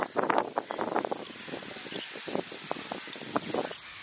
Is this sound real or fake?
real